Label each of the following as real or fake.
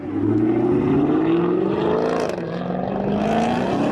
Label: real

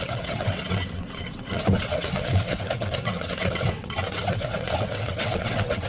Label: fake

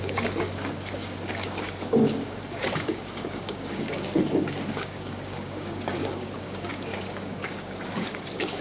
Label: fake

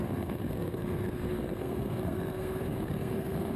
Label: fake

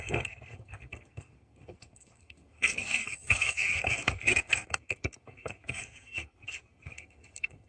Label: fake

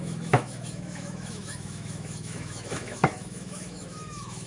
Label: fake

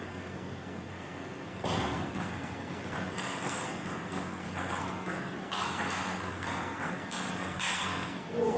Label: fake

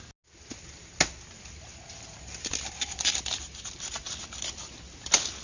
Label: real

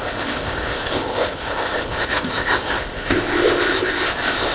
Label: fake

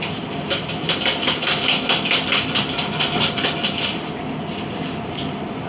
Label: real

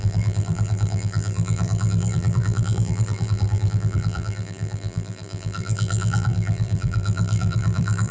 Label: fake